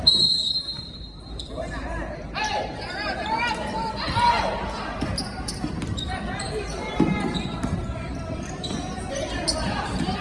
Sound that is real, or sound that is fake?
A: fake